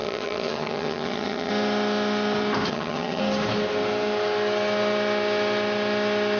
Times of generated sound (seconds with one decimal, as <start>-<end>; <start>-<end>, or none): 0.0-1.5; 2.7-3.2